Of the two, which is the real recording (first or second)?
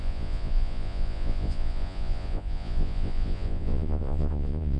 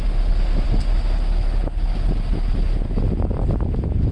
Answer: second